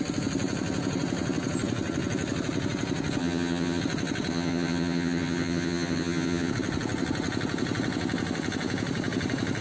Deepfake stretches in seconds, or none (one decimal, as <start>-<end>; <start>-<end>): 3.2-3.8; 4.3-6.5